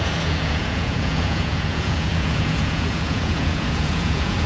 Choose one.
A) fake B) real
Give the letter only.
A